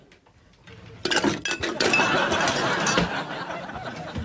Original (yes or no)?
yes